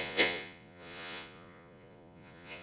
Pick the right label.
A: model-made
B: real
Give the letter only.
A